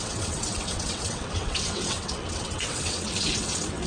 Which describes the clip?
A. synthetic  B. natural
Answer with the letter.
A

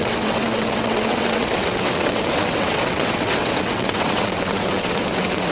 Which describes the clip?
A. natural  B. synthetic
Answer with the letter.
B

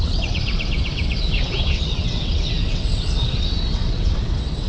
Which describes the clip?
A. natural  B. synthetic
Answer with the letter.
B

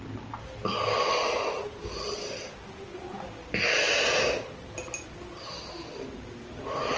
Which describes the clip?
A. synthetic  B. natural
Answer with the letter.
B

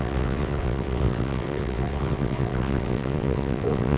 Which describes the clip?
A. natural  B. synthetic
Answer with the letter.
B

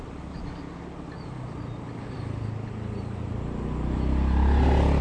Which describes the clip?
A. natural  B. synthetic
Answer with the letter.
A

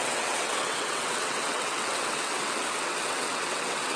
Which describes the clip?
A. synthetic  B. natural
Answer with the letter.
A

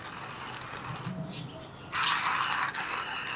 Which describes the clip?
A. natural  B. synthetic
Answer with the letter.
A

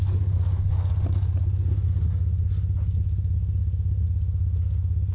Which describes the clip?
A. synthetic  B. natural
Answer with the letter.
B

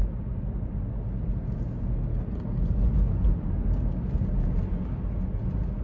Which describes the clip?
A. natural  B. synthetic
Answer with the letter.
A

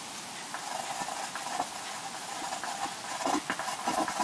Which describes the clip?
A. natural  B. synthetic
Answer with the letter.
A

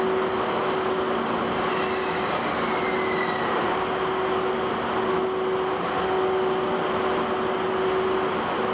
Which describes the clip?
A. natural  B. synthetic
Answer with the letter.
A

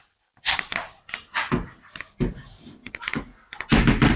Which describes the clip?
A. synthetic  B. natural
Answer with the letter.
B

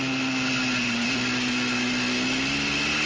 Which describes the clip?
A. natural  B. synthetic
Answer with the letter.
A